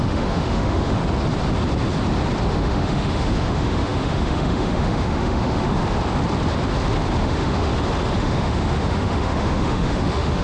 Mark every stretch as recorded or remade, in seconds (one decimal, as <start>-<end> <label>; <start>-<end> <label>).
0.0-1.0 remade; 1.0-2.5 recorded; 2.5-5.8 remade; 5.8-7.2 recorded; 7.2-7.7 remade; 7.7-8.2 recorded; 8.2-10.4 remade